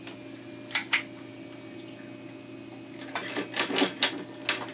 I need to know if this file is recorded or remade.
recorded